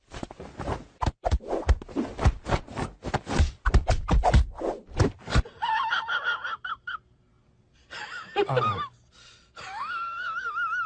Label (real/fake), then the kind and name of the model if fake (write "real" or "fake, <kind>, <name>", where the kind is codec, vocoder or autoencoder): real